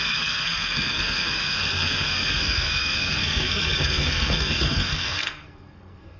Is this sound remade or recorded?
remade